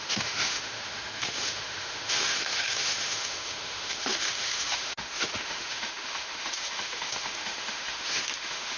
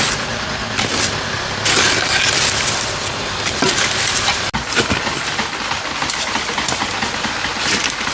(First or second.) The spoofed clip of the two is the first